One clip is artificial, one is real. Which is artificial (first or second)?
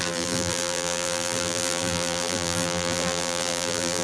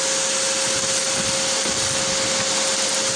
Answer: first